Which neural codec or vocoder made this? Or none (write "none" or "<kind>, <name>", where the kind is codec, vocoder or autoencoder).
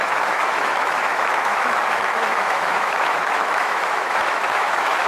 autoencoder, DAC-VAE